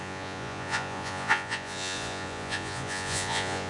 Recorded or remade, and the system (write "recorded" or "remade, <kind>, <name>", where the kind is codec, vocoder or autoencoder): remade, vocoder, Vocos